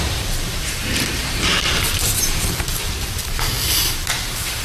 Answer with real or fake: fake